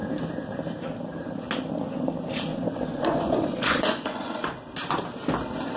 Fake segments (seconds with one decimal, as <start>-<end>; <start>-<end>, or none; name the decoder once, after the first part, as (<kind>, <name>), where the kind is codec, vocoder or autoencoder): 2.5-4.5 (vocoder, Vocos)

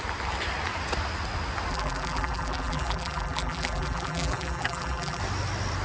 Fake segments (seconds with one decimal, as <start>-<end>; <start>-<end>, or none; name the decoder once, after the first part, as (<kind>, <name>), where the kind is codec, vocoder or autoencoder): 1.7-5.2 (vocoder, BigVGAN v2)

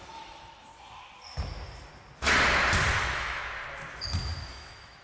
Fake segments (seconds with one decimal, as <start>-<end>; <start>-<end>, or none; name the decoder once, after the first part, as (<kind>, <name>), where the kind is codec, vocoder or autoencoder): 0.0-0.7 (autoencoder, DAC-VAE); 3.0-3.4; 4.5-5.0

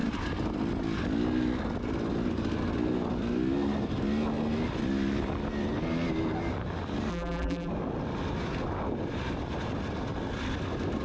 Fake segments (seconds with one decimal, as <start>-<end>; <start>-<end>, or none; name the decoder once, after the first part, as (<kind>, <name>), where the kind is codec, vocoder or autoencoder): 7.1-7.7 (vocoder, BigVGAN v2)